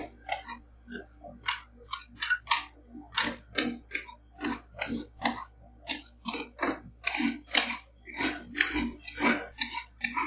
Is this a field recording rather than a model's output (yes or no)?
yes